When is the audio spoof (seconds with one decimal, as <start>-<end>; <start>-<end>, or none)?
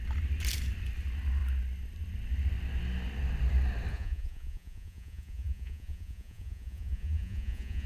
3.9-7.9